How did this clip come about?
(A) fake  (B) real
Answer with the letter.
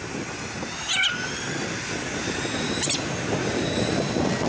B